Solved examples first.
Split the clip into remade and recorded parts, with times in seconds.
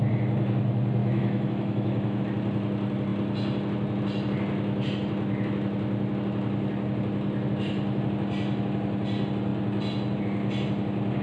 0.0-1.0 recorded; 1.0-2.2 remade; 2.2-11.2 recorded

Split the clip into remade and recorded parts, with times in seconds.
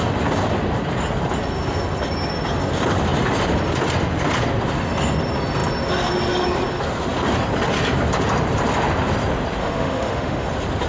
0.0-9.6 recorded; 9.6-10.5 remade; 10.5-10.9 recorded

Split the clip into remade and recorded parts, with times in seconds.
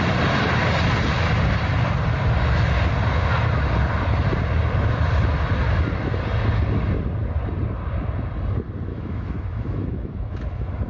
0.0-8.9 recorded; 8.9-10.9 remade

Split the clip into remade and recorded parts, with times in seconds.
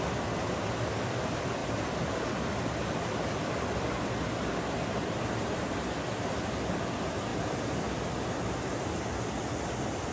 0.0-10.1 recorded